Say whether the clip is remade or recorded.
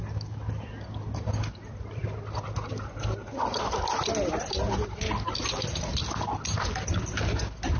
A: recorded